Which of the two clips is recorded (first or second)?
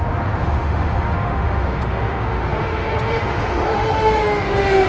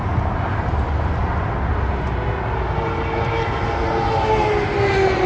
second